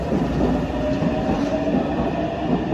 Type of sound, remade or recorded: recorded